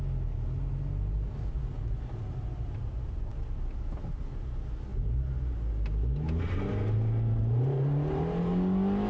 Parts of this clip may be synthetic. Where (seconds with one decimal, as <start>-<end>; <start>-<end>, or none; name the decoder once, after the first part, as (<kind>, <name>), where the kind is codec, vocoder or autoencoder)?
7.4-8.5 (vocoder, BigVGAN v2)